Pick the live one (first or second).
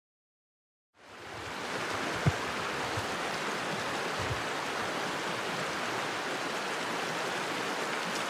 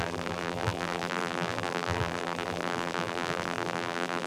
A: first